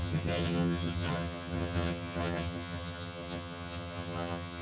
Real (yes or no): no